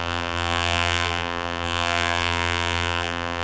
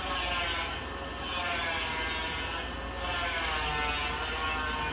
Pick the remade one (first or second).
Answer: first